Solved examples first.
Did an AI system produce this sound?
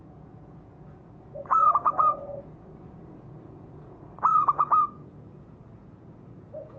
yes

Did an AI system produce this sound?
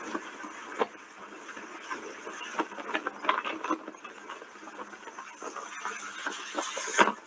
no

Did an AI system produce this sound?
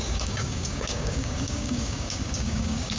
yes